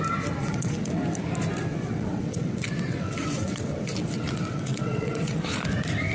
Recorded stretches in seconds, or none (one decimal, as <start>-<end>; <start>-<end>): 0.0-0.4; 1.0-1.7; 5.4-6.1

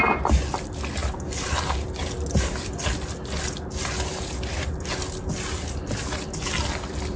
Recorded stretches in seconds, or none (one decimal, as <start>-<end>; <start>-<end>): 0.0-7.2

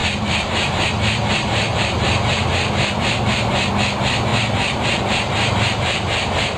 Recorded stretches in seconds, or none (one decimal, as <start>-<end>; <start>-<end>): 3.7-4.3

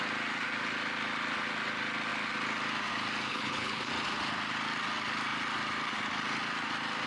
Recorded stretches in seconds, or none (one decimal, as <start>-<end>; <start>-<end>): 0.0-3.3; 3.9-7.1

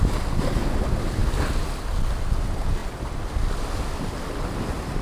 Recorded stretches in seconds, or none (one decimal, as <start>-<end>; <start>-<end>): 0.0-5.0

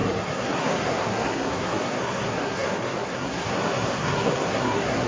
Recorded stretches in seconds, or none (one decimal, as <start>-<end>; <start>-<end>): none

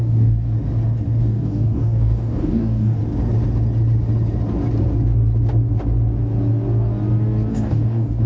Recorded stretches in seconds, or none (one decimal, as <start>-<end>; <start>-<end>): 0.5-1.2; 3.0-7.5

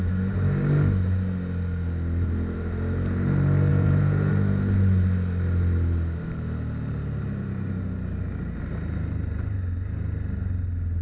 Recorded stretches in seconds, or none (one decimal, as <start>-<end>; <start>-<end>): 0.0-3.7; 4.3-11.0